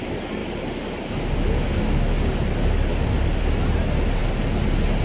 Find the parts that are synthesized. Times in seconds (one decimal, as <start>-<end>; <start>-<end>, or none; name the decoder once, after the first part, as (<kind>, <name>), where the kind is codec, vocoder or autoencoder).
none